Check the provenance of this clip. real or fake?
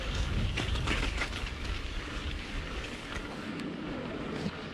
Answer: fake